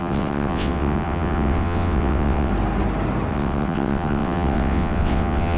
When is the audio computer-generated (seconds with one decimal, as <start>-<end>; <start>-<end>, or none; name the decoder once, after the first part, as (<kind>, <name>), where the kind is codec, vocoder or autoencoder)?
0.0-2.5 (vocoder, WaveNeXt); 3.3-5.6